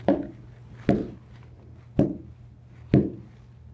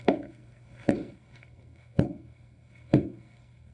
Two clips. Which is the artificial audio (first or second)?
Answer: second